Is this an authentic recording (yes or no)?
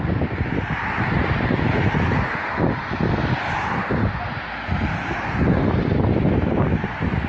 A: yes